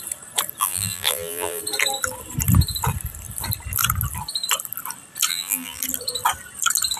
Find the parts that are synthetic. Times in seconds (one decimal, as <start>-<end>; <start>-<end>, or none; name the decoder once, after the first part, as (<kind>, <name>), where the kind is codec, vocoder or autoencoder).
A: 0.6-1.6 (vocoder, BigVGAN v2); 5.3-5.8